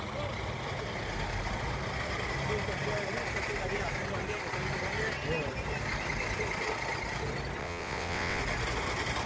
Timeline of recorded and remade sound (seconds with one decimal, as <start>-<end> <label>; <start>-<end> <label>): 0.0-7.6 recorded; 7.6-8.4 remade; 8.4-9.3 recorded